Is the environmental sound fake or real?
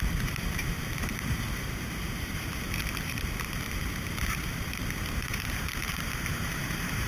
fake